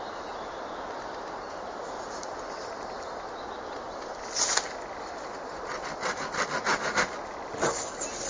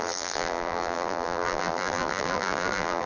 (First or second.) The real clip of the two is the first